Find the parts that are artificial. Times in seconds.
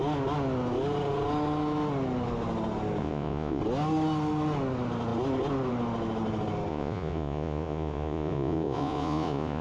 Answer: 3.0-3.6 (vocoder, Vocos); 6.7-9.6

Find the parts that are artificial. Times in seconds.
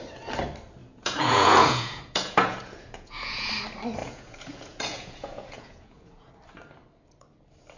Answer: 0.8-3.5 (vocoder, Vocos); 4.0-6.3